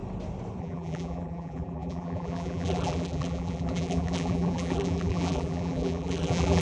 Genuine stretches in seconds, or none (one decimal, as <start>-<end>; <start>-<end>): 0.0-0.6